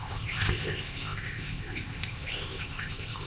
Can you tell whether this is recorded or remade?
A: remade